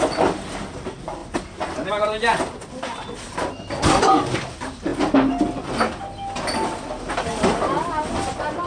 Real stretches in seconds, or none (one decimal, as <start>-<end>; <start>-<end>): 0.0-8.7